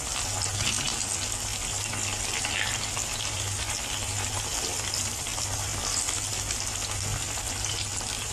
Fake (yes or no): no